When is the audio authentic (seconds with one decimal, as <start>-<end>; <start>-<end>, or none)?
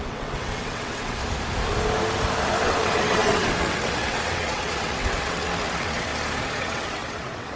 1.2-2.6; 6.1-6.6